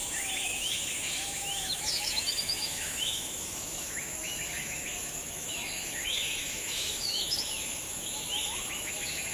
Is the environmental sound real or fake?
fake